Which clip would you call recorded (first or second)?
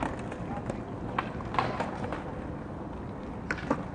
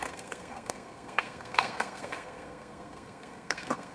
first